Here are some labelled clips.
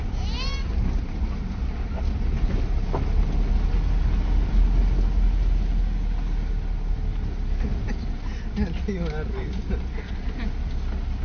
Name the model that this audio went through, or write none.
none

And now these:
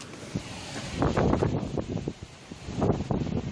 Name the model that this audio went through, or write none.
none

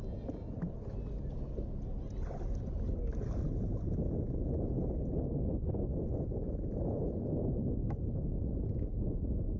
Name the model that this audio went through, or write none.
none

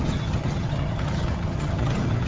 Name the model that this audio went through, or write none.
vocoder, HiFi-GAN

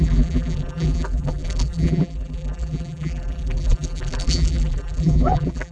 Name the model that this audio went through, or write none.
vocoder, BigVGAN v2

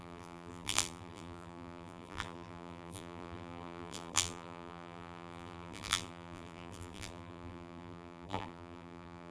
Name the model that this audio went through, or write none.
vocoder, BigVGAN v2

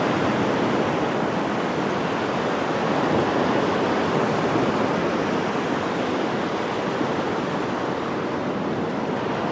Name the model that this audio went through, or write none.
none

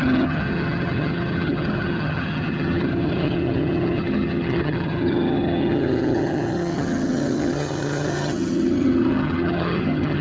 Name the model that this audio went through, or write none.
vocoder, HiFi-GAN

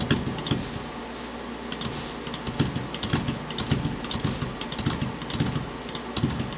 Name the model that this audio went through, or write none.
none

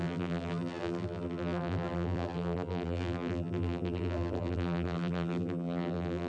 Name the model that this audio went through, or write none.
vocoder, BigVGAN v2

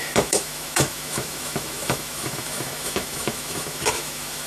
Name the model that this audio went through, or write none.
autoencoder, DAC-VAE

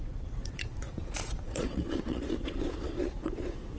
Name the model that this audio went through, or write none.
vocoder, Vocos